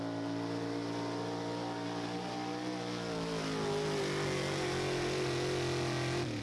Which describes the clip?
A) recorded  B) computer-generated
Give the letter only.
A